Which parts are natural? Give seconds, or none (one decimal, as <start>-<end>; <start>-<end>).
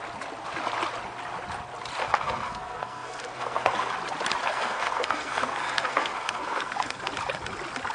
0.0-2.0; 3.9-4.4; 7.1-7.9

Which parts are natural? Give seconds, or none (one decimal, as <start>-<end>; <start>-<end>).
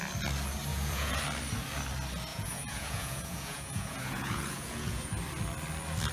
0.0-0.7; 1.2-2.3; 5.1-6.1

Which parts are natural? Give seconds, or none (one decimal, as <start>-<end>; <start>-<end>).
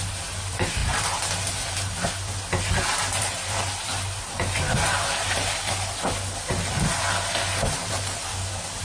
0.0-8.3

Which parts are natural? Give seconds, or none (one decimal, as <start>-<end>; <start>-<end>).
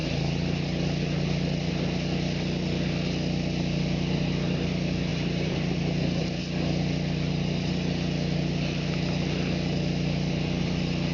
0.0-5.1; 6.4-11.1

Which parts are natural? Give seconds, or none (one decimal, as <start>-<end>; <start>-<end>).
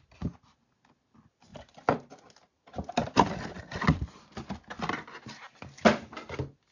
0.0-6.7